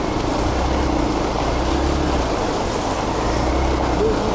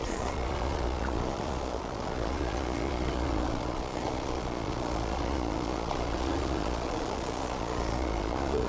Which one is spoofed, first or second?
second